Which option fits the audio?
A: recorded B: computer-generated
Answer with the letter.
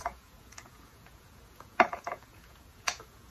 B